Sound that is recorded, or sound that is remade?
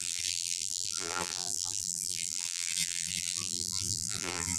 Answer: remade